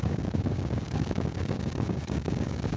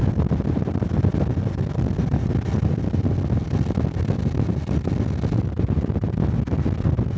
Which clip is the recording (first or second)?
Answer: second